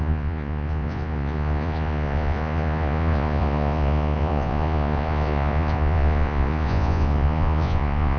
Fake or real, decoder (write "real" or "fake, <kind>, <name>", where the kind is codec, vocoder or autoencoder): fake, vocoder, Vocos